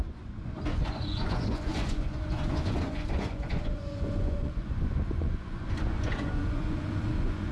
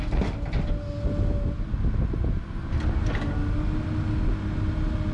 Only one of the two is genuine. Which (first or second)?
second